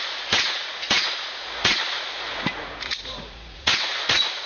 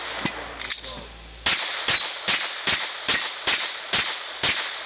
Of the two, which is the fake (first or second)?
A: first